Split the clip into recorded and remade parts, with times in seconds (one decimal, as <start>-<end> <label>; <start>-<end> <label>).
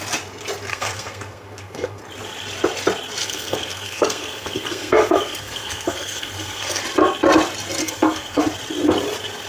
0.0-0.7 recorded; 0.7-2.0 remade; 2.0-3.2 recorded; 3.2-6.8 remade; 6.8-7.8 recorded; 7.8-8.4 remade; 8.4-9.5 recorded